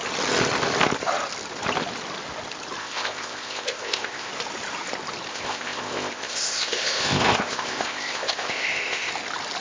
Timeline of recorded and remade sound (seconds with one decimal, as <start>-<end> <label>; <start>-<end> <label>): 0.0-2.8 recorded; 2.8-4.3 remade; 4.3-5.3 recorded; 5.3-9.1 remade; 9.1-9.6 recorded